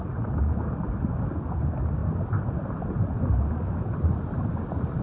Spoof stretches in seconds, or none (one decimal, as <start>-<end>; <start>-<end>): none